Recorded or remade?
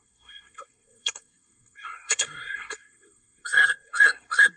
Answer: remade